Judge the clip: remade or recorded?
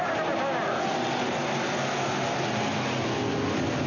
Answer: recorded